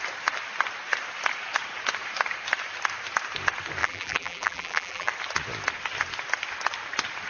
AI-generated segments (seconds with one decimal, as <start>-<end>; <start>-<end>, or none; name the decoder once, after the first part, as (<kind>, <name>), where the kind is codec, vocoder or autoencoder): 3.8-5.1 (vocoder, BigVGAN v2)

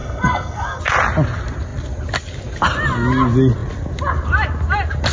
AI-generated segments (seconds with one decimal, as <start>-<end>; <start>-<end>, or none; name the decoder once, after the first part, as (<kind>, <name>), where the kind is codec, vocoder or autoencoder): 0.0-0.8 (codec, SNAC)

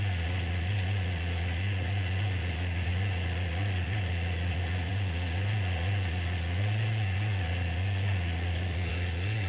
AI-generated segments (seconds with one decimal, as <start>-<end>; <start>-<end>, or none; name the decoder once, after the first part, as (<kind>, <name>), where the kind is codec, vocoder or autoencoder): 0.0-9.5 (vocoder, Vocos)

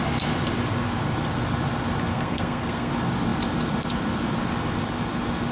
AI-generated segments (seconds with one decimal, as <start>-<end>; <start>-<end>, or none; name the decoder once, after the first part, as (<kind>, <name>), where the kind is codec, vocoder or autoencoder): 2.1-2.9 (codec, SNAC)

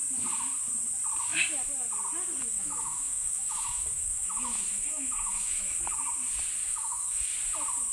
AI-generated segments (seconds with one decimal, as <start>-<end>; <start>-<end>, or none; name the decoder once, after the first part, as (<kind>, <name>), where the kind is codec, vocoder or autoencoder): 2.4-5.8 (autoencoder, DAC-VAE); 6.6-7.3

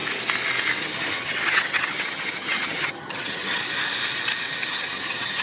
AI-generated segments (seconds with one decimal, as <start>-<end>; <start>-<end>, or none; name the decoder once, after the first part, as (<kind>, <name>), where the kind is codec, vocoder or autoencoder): 0.8-3.6 (vocoder, HiFi-GAN); 4.7-5.4